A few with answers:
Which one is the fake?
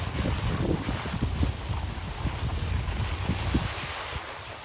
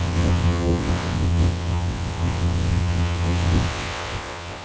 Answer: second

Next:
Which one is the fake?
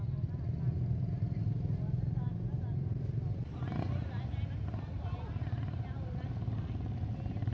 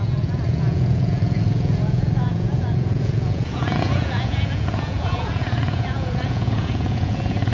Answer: second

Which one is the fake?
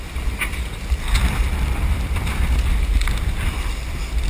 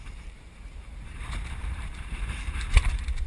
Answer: second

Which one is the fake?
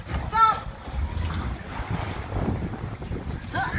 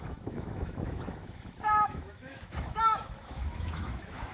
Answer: second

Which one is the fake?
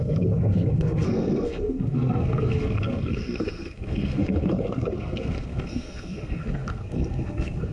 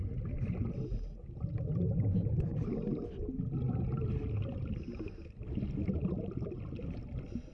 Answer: first